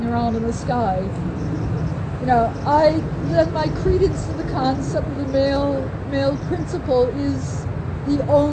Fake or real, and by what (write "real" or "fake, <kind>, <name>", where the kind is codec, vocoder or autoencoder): real